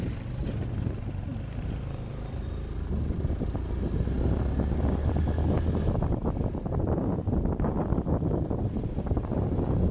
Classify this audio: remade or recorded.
recorded